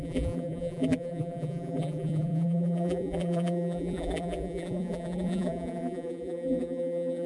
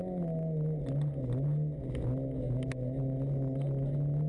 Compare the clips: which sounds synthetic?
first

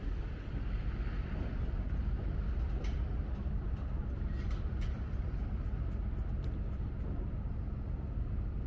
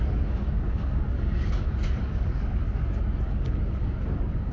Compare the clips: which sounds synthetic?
second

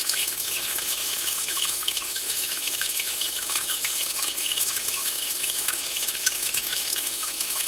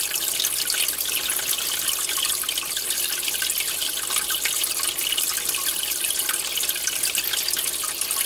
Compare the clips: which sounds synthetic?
first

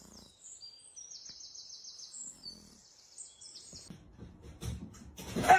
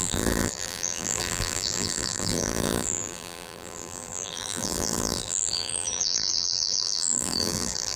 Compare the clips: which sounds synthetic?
second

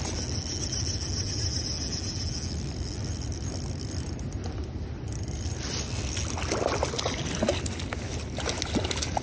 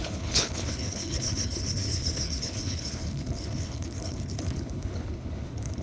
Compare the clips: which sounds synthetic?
second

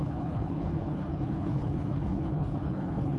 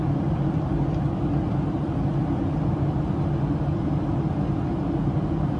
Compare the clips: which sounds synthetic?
first